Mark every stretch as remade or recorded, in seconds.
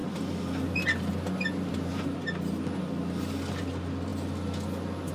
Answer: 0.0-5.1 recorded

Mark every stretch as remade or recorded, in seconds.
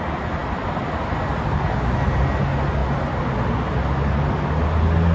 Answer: 0.0-0.4 recorded; 0.4-0.9 remade; 0.9-5.1 recorded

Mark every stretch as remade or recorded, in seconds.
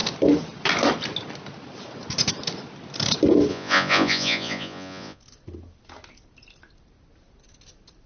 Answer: 0.0-3.5 recorded; 3.5-5.2 remade; 5.2-8.1 recorded